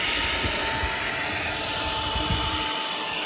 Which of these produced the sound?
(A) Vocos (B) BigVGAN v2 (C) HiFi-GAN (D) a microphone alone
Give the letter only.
D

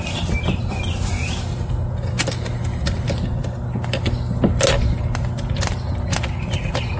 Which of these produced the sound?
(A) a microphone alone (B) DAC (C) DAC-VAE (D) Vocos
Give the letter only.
A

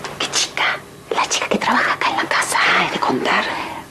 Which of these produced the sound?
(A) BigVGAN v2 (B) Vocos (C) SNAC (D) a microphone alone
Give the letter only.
D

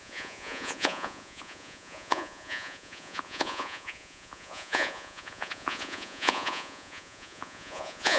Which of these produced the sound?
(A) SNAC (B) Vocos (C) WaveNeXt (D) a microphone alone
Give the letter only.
B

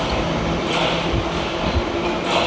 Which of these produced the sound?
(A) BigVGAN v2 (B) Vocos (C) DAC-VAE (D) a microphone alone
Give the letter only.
D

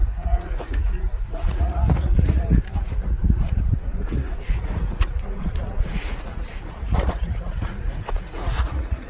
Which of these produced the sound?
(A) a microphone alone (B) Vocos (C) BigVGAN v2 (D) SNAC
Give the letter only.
B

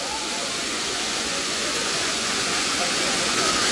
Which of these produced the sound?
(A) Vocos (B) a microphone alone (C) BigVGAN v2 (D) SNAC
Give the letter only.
A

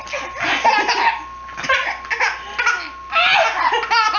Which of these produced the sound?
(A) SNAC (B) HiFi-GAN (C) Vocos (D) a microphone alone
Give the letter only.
D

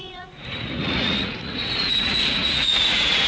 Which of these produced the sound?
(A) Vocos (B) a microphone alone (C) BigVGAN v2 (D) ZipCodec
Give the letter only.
A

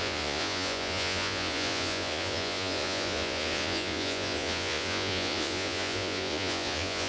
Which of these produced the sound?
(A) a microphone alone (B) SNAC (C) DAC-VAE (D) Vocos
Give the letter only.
D